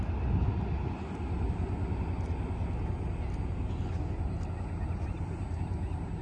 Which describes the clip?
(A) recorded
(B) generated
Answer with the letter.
A